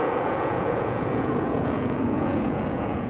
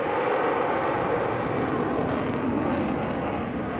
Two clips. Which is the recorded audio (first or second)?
second